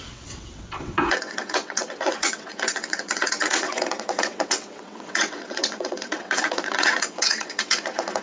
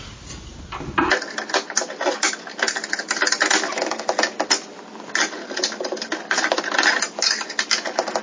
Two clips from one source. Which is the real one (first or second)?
second